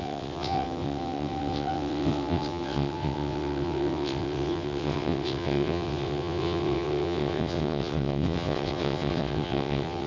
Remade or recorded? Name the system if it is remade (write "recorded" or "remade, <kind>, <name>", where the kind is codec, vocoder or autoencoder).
remade, vocoder, WaveNeXt